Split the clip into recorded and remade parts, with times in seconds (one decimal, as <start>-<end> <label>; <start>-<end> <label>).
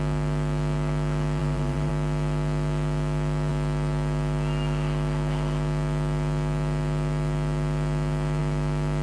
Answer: 0.0-1.4 recorded; 1.4-1.9 remade; 1.9-9.0 recorded